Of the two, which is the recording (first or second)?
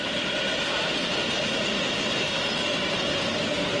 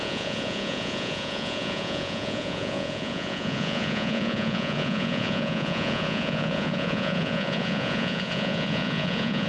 first